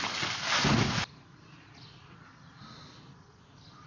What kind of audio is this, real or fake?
real